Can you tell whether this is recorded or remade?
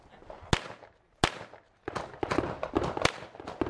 recorded